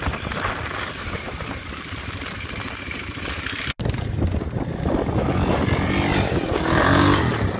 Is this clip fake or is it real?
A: real